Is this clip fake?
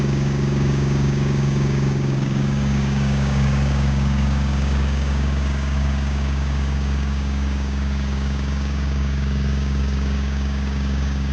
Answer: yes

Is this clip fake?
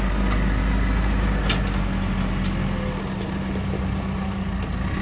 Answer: no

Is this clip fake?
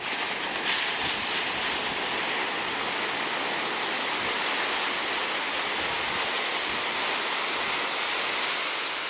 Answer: no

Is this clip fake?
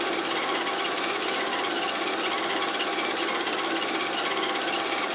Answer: no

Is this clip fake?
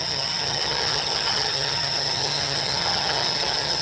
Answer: yes